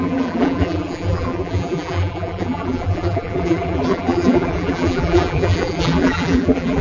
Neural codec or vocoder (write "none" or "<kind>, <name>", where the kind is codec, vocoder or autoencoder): vocoder, BigVGAN v2